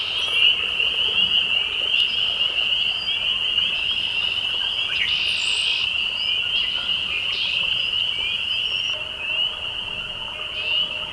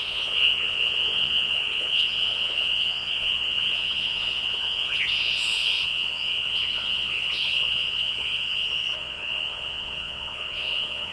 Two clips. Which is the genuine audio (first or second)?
first